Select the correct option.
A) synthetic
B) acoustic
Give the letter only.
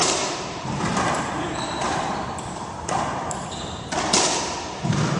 A